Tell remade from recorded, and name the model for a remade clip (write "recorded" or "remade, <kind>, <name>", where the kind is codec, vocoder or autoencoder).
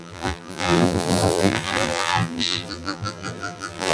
remade, vocoder, BigVGAN v2